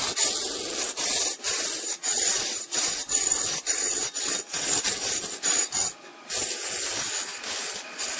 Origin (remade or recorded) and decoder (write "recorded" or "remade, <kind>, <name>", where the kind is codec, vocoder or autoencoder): recorded